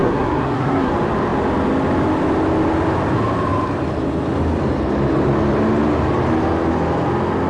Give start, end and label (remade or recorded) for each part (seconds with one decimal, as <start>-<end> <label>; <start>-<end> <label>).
0.0-0.9 remade; 0.9-7.5 recorded